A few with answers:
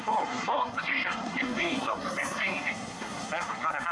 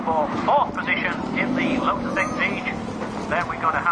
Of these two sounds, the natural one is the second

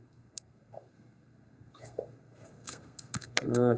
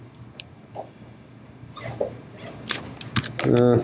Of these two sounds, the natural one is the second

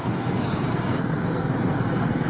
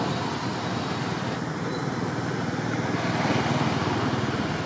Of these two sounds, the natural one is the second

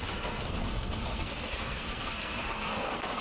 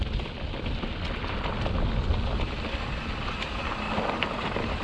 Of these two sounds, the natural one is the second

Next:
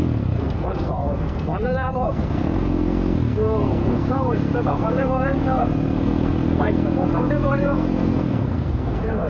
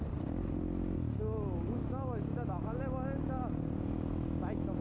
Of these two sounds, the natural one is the second